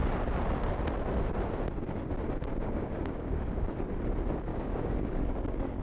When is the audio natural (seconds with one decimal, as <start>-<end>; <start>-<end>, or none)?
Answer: 0.0-2.5; 3.7-4.5